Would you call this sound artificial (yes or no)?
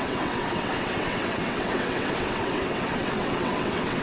yes